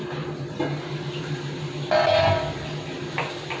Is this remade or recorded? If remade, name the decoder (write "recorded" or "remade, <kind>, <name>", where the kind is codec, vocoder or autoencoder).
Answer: recorded